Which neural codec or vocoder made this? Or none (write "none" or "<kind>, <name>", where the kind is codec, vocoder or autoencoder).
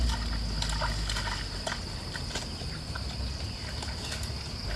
none